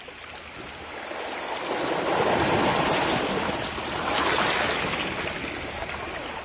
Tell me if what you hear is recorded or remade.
recorded